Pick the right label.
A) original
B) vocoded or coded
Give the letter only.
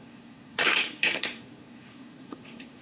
B